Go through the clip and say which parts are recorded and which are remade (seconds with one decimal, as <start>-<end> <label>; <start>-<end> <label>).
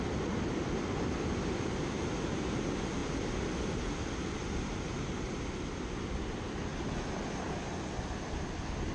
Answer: 0.0-8.9 recorded